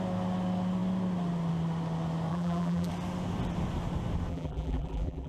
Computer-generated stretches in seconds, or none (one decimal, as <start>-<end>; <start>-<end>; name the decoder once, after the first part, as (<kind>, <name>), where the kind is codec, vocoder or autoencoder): 2.3-2.9 (vocoder, BigVGAN v2); 4.3-5.3